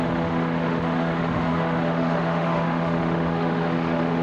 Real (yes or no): no